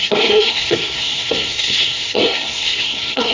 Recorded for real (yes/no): no